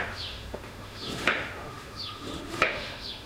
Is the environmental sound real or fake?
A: fake